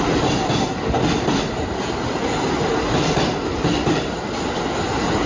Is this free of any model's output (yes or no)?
yes